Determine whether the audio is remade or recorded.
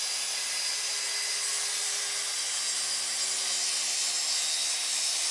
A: recorded